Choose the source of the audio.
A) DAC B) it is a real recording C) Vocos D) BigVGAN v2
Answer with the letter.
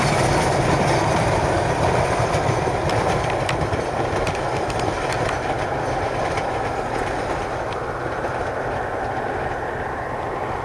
B